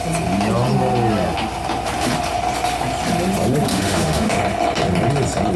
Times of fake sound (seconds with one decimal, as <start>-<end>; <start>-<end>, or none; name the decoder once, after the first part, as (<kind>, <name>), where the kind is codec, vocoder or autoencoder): 3.7-4.4 (autoencoder, DAC-VAE)